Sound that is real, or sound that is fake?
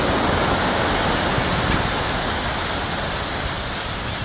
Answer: real